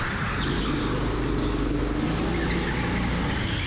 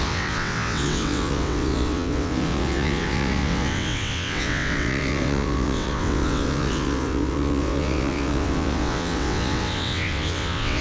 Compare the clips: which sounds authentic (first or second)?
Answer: first